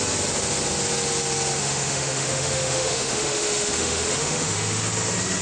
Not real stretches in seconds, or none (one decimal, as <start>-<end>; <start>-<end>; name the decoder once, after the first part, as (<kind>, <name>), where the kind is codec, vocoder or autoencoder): 1.6-4.8 (autoencoder, DAC-VAE)